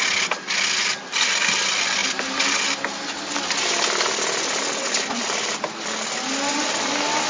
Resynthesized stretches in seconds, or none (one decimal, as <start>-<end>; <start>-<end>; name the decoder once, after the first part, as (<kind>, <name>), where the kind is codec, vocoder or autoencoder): none